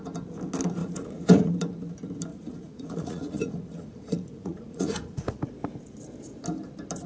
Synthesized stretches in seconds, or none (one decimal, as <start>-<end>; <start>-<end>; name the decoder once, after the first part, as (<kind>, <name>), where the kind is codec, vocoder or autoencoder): 0.8-1.5 (vocoder, Vocos); 2.3-5.5